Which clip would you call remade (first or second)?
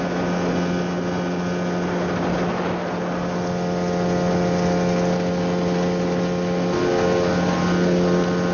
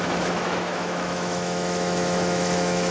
second